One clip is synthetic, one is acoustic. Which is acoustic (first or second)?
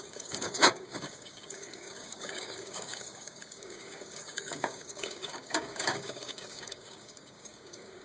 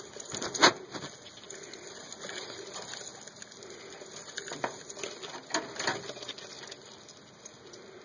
second